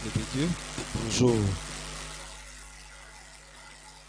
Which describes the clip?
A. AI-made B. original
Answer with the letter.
B